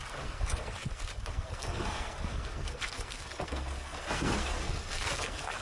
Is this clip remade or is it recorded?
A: remade